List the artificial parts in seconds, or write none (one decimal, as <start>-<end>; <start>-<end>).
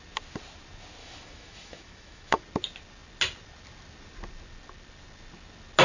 1.0-2.4